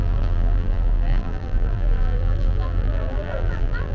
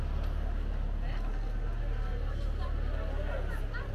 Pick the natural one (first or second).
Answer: second